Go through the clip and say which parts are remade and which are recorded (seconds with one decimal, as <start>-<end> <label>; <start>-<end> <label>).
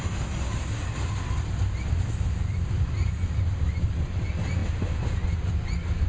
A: 0.0-6.1 recorded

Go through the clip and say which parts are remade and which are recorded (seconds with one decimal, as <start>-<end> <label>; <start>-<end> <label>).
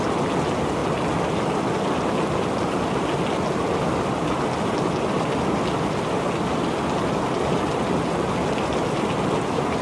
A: 0.0-9.8 recorded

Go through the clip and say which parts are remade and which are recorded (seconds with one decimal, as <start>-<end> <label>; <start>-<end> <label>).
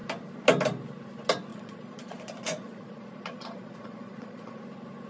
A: 0.0-1.5 recorded; 1.5-4.6 remade; 4.6-5.1 recorded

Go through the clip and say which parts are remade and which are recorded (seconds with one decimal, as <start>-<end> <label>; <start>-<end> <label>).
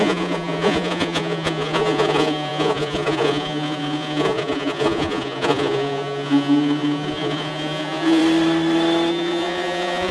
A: 0.0-8.2 remade; 8.2-9.1 recorded; 9.1-10.1 remade